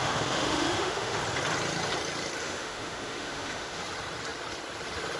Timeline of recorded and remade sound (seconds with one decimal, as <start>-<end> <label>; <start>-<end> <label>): 0.0-1.2 remade; 1.2-2.4 recorded; 2.4-3.8 remade; 3.8-5.2 recorded

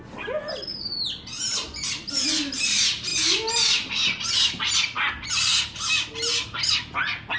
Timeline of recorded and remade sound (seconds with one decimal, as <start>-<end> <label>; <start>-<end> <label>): 0.0-7.4 recorded

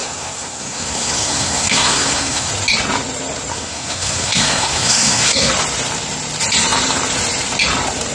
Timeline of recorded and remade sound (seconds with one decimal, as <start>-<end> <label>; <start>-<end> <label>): 0.0-2.5 remade; 2.5-3.5 recorded; 3.5-5.5 remade; 5.5-8.1 recorded